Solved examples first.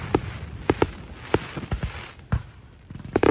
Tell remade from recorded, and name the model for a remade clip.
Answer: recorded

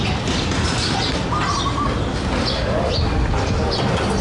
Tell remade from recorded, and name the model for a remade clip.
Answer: recorded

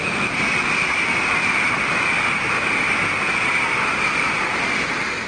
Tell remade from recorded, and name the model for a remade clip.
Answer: recorded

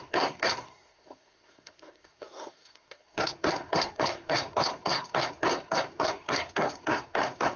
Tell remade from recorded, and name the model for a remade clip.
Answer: remade, codec, SNAC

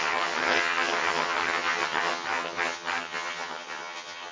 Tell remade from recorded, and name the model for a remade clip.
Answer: remade, vocoder, HiFi-GAN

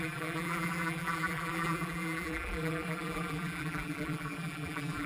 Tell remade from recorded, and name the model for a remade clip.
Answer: remade, vocoder, BigVGAN v2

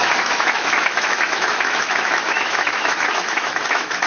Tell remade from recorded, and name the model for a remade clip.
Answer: remade, autoencoder, DAC-VAE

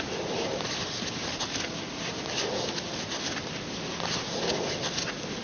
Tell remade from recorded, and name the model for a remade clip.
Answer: recorded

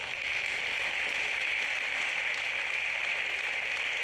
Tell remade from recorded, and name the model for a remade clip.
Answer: recorded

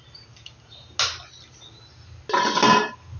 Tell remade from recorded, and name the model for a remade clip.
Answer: recorded